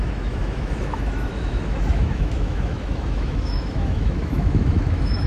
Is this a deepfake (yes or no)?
yes